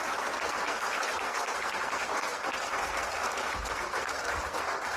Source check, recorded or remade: remade